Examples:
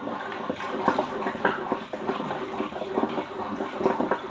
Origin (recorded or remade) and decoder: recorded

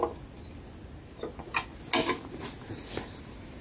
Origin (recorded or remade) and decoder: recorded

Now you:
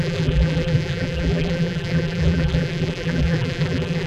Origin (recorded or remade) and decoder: remade, vocoder, BigVGAN v2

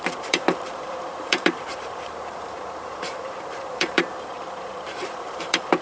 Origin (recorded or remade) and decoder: remade, vocoder, BigVGAN v2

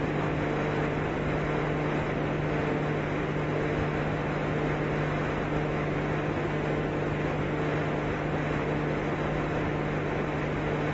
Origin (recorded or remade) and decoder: recorded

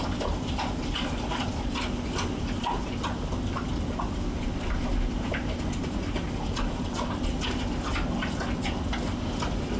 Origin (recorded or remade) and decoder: recorded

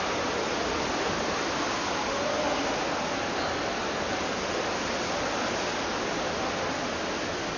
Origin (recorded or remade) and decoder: recorded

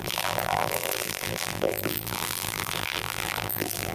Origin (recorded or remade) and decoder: remade, vocoder, BigVGAN v2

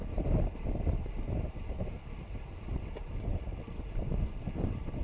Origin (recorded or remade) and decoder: remade, vocoder, BigVGAN v2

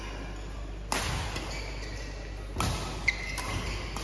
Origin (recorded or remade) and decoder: recorded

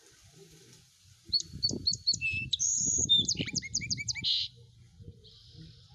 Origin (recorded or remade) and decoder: remade, vocoder, BigVGAN v2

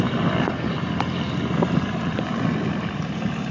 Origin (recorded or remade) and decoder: remade, vocoder, BigVGAN v2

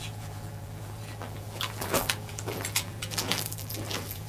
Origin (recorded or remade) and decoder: remade, vocoder, BigVGAN v2